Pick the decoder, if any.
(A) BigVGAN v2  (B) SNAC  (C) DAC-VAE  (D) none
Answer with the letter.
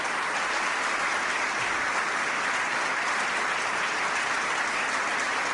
D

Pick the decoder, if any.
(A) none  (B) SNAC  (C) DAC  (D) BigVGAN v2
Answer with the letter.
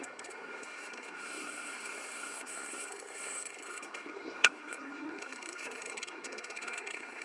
B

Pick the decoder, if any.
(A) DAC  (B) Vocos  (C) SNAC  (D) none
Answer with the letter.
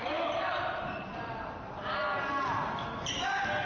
D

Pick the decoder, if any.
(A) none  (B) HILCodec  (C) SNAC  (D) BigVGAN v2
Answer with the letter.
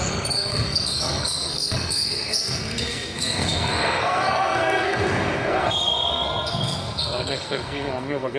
C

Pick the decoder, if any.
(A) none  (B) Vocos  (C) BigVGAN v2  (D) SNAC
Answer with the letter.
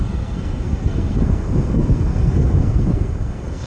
D